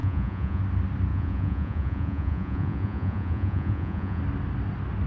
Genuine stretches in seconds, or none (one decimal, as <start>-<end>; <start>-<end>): 0.6-1.1; 4.2-5.1